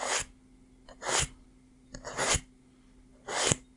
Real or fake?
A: real